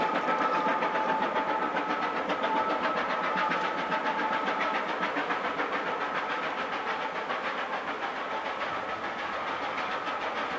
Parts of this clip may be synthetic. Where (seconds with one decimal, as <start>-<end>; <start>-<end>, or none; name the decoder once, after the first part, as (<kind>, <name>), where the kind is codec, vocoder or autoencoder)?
none